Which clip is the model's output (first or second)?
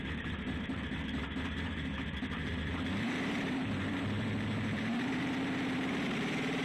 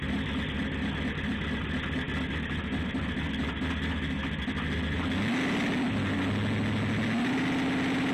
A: first